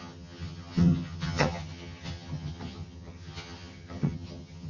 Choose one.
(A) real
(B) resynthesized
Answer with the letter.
B